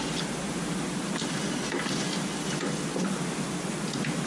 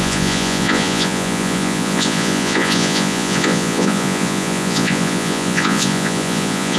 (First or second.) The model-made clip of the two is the second